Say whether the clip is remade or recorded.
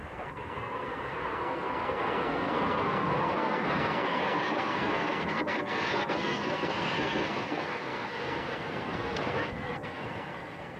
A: remade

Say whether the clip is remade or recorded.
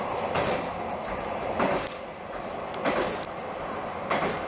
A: recorded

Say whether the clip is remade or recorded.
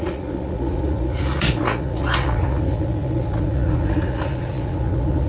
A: remade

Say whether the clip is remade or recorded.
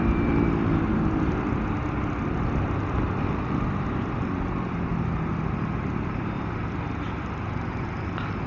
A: recorded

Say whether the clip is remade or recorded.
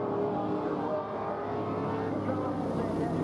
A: recorded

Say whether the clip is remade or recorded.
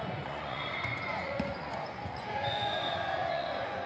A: remade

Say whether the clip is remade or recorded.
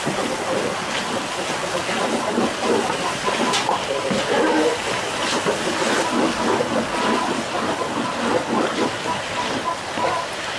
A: recorded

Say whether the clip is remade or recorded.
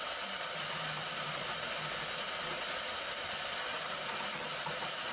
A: recorded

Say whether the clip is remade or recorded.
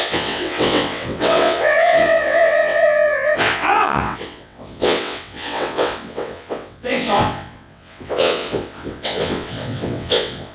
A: remade